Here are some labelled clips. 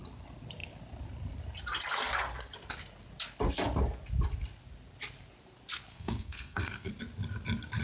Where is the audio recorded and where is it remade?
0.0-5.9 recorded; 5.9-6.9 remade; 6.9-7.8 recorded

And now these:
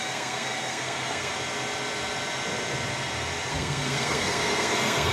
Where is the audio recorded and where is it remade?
0.0-1.3 remade; 1.3-3.5 recorded; 3.5-5.1 remade

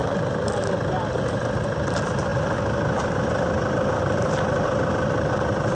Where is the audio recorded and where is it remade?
0.0-5.7 recorded

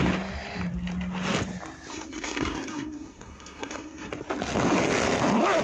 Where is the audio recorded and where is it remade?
0.0-1.9 recorded; 1.9-4.1 remade; 4.1-5.6 recorded

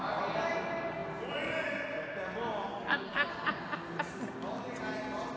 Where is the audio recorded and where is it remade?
0.0-2.7 recorded; 2.7-3.3 remade; 3.3-5.4 recorded